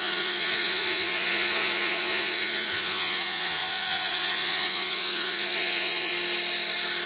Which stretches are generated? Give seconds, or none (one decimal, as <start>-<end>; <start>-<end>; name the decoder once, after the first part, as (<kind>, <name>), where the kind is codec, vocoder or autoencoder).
0.0-6.1 (vocoder, Vocos)